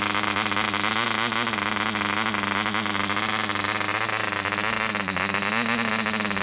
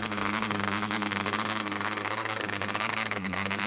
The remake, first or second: second